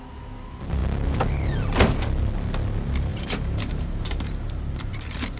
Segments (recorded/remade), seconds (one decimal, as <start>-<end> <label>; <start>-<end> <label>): 0.0-3.1 recorded; 3.1-5.4 remade